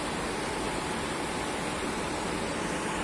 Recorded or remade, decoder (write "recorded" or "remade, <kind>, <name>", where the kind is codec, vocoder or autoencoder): remade, vocoder, BigVGAN v2